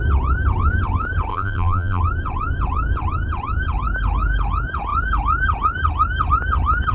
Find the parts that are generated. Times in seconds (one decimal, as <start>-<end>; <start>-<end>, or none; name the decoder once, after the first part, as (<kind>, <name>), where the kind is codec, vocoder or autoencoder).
1.3-2.0 (vocoder, BigVGAN v2)